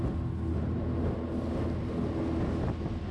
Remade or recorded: recorded